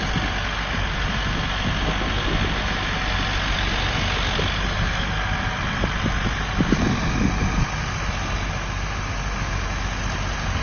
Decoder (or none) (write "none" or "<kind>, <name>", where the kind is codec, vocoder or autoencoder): none